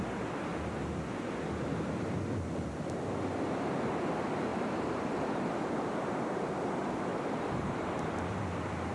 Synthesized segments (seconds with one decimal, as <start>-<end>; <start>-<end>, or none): 4.5-5.5; 7.1-8.2

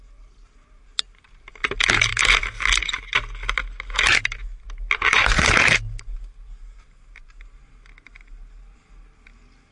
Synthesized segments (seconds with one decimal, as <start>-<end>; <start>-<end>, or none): none

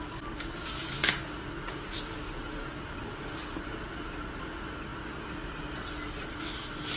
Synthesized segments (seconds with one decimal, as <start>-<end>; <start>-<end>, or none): none

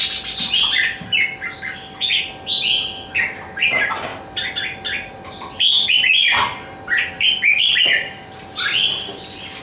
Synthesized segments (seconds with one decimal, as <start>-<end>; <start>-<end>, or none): 4.1-8.3

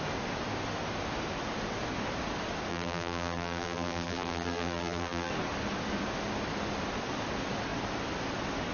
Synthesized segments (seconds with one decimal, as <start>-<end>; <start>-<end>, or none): 2.7-5.3

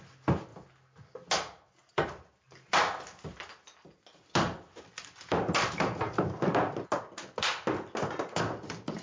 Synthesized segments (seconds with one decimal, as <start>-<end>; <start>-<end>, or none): none

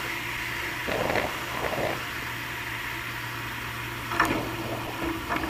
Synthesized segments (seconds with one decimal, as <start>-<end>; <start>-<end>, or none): none

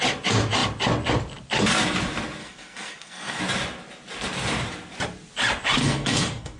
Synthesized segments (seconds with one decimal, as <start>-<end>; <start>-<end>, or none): 2.4-3.4; 5.8-6.6